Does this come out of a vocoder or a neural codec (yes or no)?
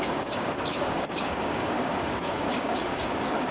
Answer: yes